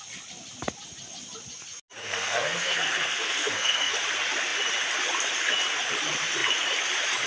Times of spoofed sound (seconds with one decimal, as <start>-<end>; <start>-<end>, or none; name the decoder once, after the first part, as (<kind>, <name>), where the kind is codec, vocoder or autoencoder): 2.0-3.9 (codec, SNAC)